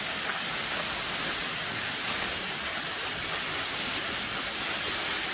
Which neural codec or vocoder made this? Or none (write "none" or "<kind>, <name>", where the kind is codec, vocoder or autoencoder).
none